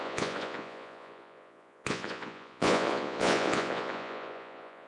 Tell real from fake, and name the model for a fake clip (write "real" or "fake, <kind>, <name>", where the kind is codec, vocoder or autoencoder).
fake, vocoder, Vocos